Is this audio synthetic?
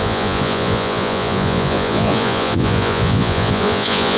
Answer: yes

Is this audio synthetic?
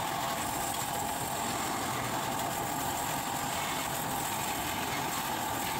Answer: no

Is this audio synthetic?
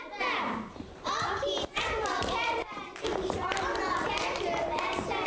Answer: yes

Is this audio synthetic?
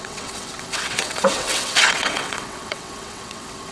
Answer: yes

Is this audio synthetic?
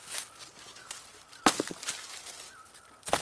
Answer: no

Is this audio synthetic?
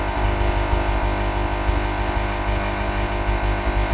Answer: yes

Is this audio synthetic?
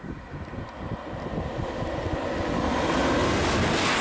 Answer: no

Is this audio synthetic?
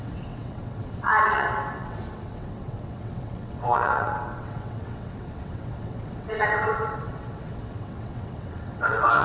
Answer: yes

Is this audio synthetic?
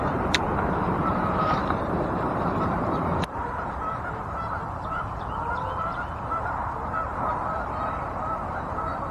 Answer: yes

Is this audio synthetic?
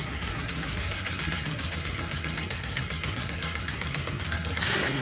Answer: yes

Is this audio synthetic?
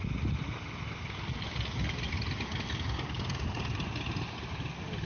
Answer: no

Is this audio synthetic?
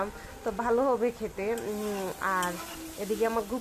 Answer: no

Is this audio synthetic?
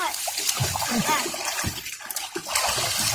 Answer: yes